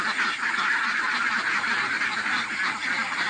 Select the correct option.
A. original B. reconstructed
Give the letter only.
A